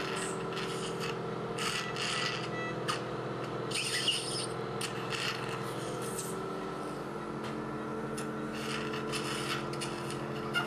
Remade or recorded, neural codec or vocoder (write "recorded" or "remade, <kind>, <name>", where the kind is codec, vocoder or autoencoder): recorded